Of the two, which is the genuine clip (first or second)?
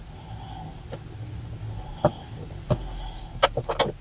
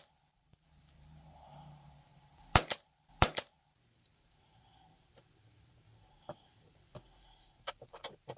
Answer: first